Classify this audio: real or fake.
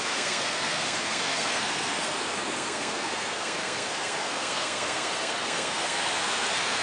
fake